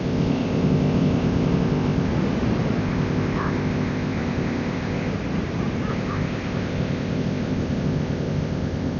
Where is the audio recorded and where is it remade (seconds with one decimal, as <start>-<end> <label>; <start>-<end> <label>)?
0.0-2.1 remade; 2.1-2.8 recorded; 2.8-5.1 remade; 5.1-5.9 recorded; 5.9-9.0 remade